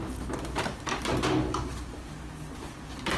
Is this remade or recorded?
recorded